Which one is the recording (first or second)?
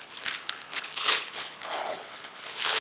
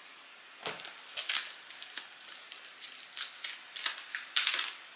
second